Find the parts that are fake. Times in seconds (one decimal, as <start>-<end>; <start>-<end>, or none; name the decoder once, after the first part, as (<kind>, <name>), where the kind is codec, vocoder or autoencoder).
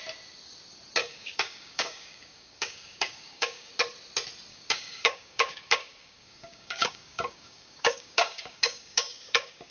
1.0-3.7 (codec, DAC); 4.5-9.7